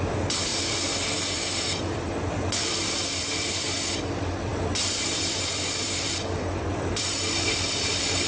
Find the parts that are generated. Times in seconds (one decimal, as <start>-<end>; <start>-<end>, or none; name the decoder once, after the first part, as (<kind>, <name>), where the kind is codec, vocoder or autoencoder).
0.0-0.5 (vocoder, BigVGAN v2); 1.3-8.3

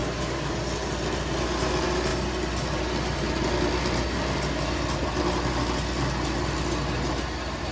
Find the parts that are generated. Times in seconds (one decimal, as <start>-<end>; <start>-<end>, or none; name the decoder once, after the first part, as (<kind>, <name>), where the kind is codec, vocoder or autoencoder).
0.0-0.5 (codec, DAC)

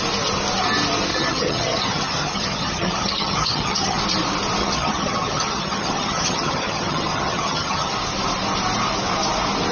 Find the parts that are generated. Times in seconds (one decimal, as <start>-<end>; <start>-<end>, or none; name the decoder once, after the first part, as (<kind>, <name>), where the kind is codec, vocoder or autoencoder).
1.1-4.0 (vocoder, HiFi-GAN); 4.6-7.9

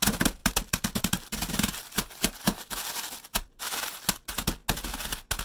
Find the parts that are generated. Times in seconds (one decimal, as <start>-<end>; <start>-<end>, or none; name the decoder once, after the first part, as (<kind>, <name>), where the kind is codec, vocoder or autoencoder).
0.4-3.6 (vocoder, BigVGAN v2)

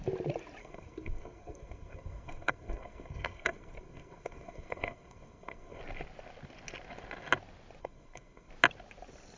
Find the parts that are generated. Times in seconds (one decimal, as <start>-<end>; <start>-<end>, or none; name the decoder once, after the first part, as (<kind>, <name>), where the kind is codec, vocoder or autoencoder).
0.6-5.8 (codec, SNAC); 7.8-8.5